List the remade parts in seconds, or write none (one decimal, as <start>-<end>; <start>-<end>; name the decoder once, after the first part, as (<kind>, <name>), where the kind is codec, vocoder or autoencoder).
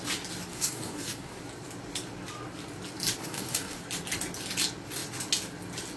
0.5-1.4 (codec, DAC); 3.2-3.8